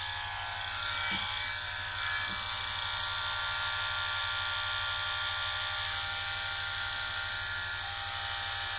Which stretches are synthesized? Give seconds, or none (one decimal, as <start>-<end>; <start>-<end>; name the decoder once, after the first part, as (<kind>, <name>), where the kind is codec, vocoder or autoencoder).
none